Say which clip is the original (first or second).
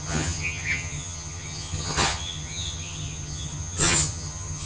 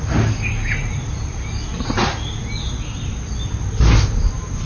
second